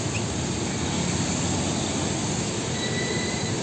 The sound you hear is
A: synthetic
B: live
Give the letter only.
B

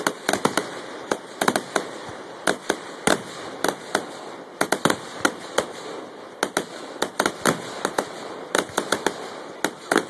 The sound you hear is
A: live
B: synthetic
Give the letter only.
A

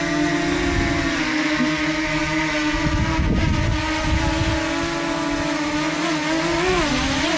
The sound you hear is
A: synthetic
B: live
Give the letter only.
B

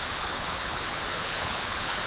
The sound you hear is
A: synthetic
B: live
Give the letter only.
A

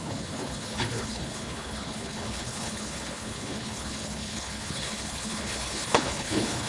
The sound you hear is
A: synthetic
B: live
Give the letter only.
A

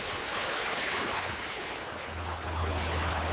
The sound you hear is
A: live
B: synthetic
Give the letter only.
B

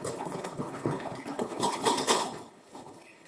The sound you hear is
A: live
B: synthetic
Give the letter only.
B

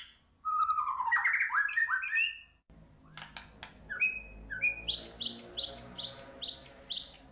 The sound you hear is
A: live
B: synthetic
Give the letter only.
A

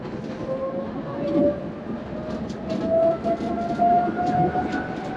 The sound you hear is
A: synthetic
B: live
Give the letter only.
B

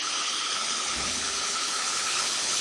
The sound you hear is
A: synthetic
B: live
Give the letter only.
A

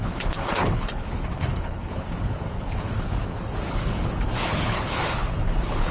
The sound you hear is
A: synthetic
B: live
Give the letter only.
A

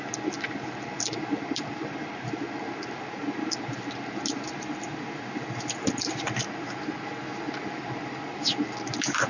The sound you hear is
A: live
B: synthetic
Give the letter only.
A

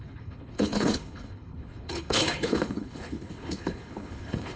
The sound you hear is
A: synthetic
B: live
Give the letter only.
A